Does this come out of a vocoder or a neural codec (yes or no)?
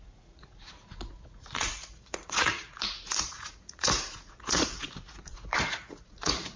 yes